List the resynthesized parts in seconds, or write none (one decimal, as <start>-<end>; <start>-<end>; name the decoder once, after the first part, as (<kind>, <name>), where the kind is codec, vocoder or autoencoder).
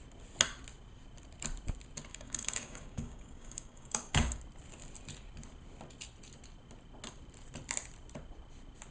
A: 2.1-4.4 (codec, DAC)